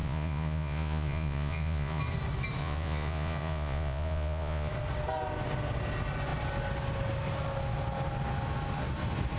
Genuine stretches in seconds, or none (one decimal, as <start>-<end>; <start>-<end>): 2.0-2.6; 4.7-9.4